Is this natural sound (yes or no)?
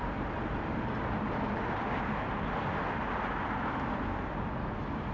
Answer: yes